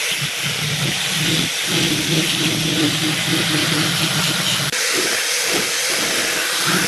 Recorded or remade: remade